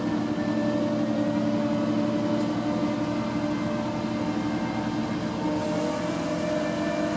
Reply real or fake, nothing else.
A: real